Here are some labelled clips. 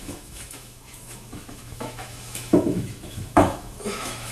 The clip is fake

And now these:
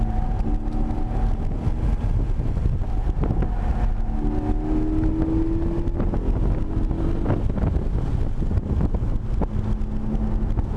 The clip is real